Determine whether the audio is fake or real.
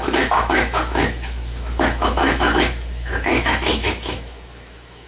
fake